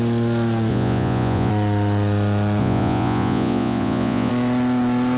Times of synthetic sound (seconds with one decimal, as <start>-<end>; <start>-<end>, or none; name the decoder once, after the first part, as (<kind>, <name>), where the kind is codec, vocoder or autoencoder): 0.7-1.5 (vocoder, Vocos); 2.6-4.3